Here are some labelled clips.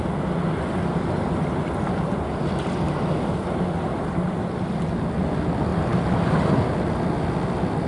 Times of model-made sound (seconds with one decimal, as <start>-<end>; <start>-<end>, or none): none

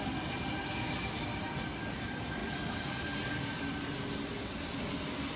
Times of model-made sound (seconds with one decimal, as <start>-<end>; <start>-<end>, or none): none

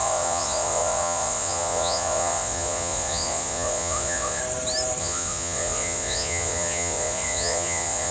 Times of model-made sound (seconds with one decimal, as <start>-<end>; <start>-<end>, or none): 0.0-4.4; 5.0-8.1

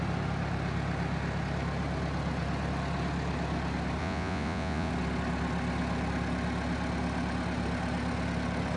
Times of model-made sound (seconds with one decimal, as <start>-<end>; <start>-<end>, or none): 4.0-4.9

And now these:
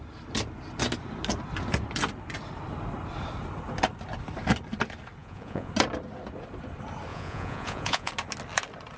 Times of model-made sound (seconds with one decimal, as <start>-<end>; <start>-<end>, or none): 5.2-5.7; 7.1-8.1

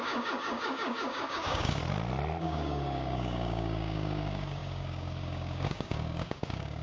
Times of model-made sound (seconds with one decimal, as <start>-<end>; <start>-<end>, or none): 0.0-1.8; 2.4-6.8